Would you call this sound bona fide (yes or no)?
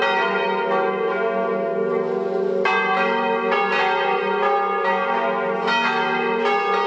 yes